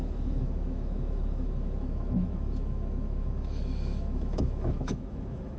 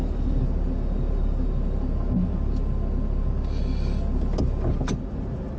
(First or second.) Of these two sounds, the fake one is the first